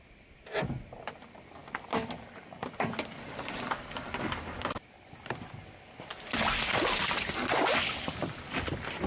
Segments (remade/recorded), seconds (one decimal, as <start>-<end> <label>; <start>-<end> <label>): 0.0-6.1 remade; 6.1-8.2 recorded; 8.2-9.1 remade